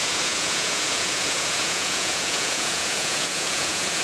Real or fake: fake